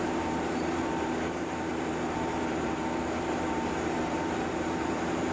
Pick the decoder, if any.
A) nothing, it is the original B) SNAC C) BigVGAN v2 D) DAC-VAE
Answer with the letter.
C